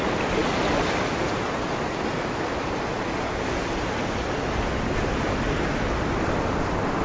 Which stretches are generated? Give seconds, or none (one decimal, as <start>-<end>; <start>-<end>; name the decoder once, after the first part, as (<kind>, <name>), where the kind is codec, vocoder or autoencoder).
none